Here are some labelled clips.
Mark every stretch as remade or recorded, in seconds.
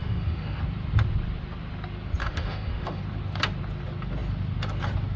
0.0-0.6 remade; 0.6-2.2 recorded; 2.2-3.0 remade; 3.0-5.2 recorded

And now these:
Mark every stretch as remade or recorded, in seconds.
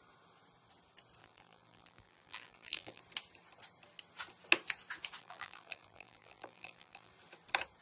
0.0-1.2 recorded; 1.2-3.0 remade; 3.0-5.2 recorded; 5.2-7.1 remade; 7.1-7.8 recorded